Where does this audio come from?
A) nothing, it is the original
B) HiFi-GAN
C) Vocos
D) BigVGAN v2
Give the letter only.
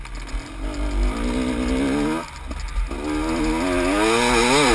A